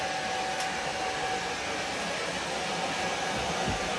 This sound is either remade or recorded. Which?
recorded